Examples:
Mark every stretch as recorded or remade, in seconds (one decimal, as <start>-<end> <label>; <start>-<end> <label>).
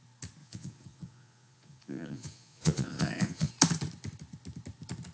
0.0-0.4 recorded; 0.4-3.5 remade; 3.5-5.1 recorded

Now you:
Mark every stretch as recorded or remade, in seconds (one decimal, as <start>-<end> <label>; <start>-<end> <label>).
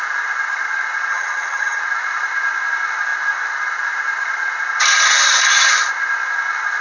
0.0-1.1 recorded; 1.1-1.8 remade; 1.8-6.8 recorded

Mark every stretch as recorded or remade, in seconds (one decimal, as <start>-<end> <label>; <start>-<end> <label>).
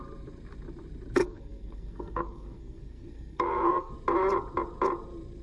0.0-1.2 recorded; 1.2-3.9 remade; 3.9-5.4 recorded